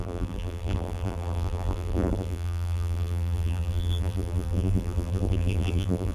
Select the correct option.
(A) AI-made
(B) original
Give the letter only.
A